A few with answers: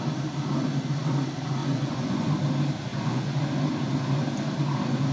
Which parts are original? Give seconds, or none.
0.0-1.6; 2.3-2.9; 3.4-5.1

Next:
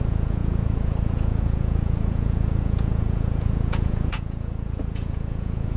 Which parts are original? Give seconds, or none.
none